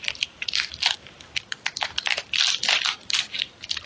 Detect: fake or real real